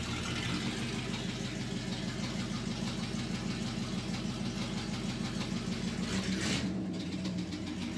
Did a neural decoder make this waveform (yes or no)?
no